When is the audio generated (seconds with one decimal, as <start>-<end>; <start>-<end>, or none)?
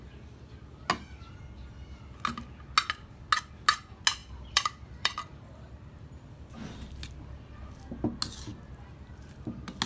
4.2-6.3